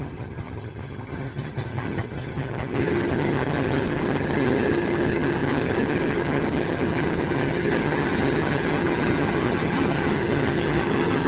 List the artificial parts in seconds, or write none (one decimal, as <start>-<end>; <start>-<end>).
0.0-11.3